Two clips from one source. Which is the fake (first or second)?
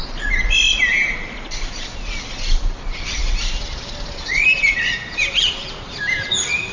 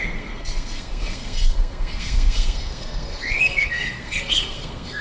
second